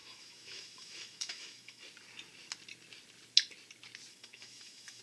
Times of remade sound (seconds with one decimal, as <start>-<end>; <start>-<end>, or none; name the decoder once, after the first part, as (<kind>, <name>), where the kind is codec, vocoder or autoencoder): 0.0-1.8 (autoencoder, DAC-VAE); 4.1-5.0

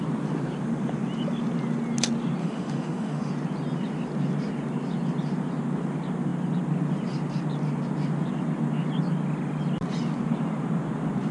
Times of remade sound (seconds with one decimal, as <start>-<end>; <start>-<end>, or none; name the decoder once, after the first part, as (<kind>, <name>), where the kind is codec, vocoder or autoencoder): 2.4-3.3 (autoencoder, DAC-VAE)

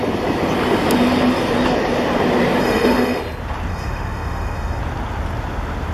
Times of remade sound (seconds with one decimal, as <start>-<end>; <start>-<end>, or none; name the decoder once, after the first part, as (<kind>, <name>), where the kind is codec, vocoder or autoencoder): 2.6-3.2 (autoencoder, DAC-VAE); 3.7-4.8

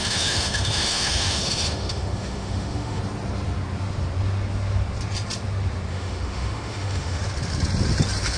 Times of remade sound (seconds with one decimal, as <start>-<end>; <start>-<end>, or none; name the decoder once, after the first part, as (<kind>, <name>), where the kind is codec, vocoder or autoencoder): 0.0-3.0 (autoencoder, DAC-VAE); 5.9-7.2

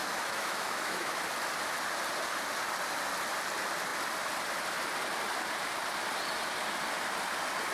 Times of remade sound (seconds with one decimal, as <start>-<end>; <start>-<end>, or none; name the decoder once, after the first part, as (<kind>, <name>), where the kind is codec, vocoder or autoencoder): 0.0-1.2 (autoencoder, DAC-VAE)